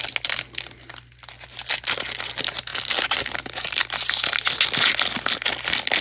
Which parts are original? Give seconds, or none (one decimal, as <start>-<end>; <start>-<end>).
0.0-6.0